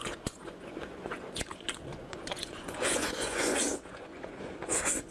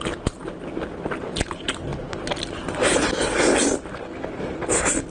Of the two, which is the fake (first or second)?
first